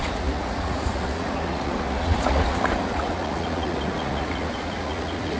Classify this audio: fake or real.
fake